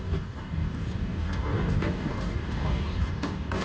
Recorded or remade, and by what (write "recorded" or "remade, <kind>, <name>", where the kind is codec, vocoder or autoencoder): remade, codec, DAC